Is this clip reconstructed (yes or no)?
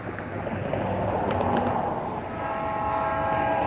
no